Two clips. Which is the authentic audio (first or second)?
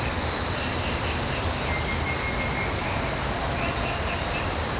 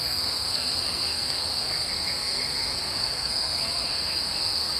first